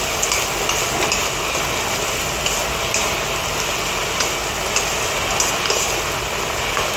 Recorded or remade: recorded